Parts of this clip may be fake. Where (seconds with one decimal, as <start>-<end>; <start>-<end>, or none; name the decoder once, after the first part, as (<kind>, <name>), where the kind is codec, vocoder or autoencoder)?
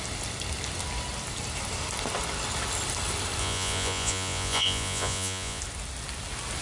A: 3.4-5.6 (vocoder, Vocos)